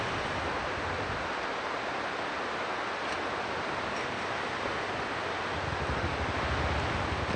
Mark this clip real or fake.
real